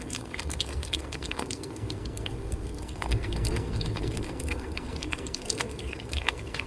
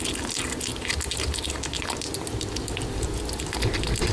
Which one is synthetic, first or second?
first